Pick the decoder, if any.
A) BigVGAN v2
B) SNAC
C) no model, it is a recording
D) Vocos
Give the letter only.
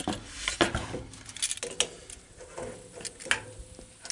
C